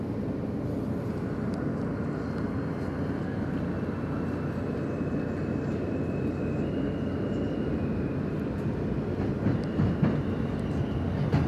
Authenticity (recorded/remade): recorded